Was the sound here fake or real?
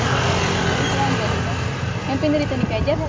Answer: real